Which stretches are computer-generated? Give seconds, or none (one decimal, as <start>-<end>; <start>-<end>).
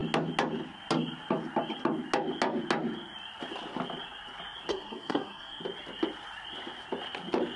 4.7-5.6